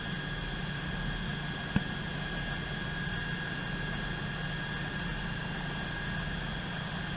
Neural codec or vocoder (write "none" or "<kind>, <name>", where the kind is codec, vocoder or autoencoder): none